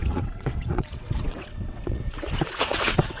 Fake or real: fake